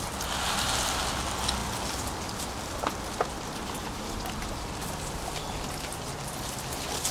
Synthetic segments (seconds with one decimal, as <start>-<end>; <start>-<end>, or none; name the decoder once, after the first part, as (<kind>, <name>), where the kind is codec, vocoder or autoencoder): none